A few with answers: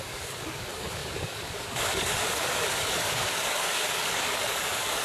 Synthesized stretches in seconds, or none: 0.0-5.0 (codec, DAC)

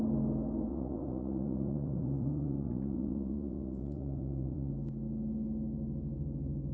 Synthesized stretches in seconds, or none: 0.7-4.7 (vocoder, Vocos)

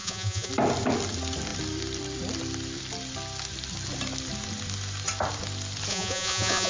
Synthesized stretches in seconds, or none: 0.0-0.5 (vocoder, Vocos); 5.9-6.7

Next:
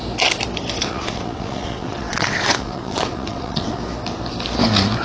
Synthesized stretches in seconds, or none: 0.8-3.8 (vocoder, WaveNeXt)